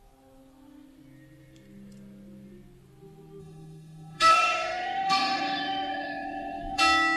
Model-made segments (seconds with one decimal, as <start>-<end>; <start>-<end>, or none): 3.4-6.8